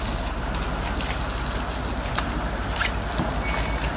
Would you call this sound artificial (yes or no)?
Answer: no